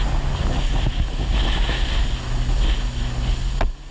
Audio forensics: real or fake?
real